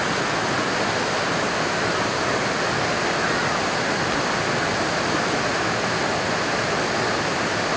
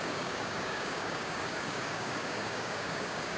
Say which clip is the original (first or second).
first